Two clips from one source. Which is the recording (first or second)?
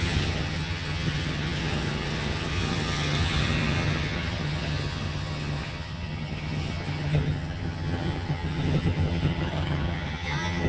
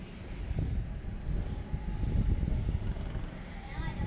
second